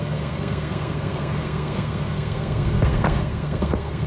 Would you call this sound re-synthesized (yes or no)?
yes